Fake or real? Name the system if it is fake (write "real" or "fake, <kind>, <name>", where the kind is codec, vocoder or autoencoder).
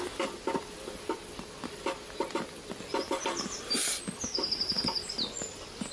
real